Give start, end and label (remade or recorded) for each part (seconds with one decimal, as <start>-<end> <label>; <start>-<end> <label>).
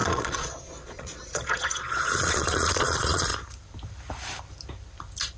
0.0-3.3 remade; 3.3-5.4 recorded